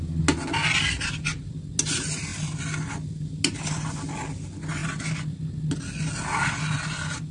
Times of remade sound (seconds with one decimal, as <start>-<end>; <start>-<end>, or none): none